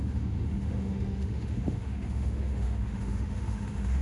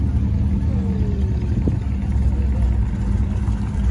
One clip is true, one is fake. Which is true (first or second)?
second